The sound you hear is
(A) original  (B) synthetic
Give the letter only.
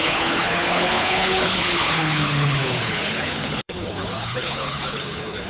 B